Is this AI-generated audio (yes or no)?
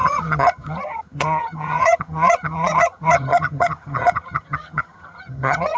yes